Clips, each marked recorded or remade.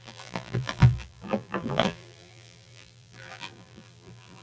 remade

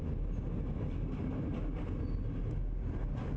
recorded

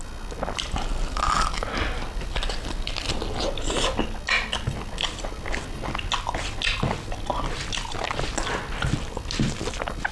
recorded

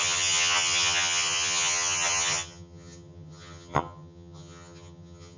remade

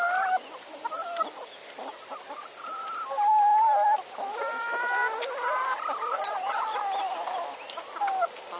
recorded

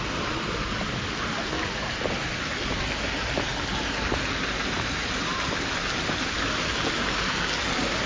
recorded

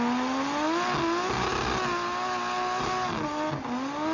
recorded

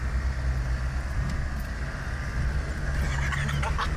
recorded